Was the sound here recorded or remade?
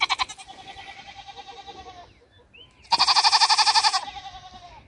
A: recorded